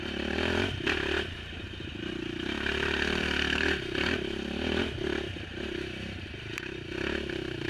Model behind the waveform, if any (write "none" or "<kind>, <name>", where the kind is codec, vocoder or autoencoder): vocoder, BigVGAN v2